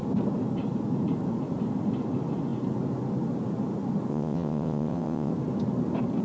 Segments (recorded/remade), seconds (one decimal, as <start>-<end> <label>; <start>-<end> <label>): 0.0-4.1 recorded; 4.1-5.3 remade; 5.3-6.2 recorded